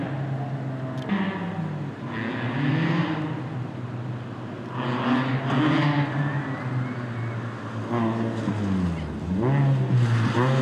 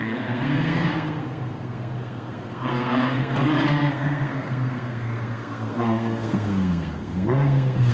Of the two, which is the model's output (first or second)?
second